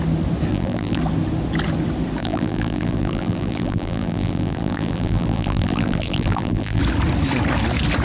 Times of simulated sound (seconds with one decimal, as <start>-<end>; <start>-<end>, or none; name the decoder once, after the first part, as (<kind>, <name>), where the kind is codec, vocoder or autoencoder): 0.5-1.0 (vocoder, BigVGAN v2); 2.2-6.8